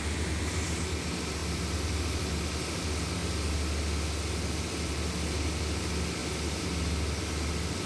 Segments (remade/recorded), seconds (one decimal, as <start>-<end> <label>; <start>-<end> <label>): 0.0-1.4 recorded; 1.4-2.2 remade; 2.2-7.9 recorded